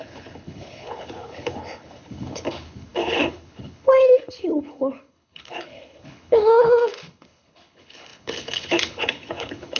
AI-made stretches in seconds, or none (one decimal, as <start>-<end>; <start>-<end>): 0.0-9.8